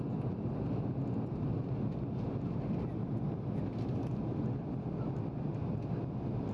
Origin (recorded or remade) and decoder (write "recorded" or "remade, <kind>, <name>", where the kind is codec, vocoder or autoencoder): recorded